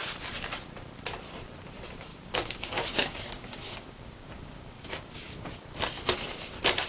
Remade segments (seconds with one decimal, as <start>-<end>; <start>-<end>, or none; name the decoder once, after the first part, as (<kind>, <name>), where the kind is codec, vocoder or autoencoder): 2.1-5.5 (codec, DAC)